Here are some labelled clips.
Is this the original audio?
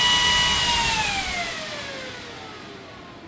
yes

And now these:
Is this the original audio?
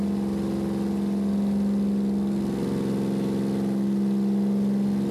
yes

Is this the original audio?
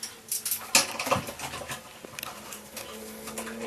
yes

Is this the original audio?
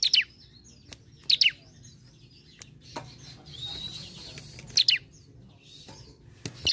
yes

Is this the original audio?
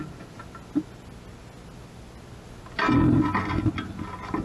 yes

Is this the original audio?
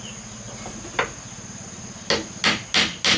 yes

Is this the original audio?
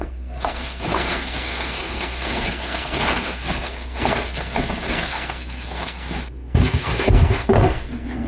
no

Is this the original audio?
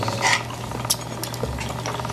yes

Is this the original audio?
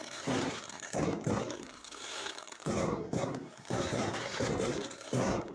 no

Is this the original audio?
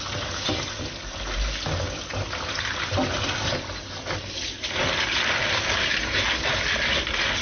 yes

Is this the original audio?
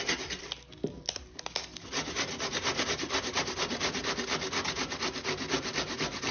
yes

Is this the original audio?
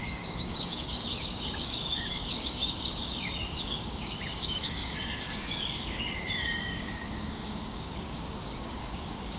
no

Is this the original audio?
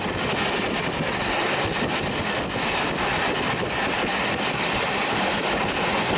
yes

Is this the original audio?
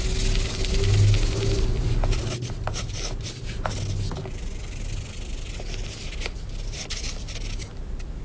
yes